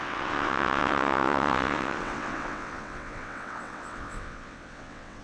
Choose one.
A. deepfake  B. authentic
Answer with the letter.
A